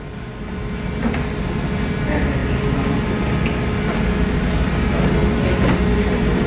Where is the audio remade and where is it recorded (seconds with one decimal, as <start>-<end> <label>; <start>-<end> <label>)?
0.0-6.5 recorded

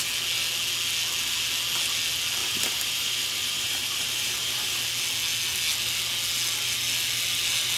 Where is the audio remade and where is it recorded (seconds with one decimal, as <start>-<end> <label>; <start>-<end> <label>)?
0.0-2.4 recorded; 2.4-4.8 remade; 4.8-7.8 recorded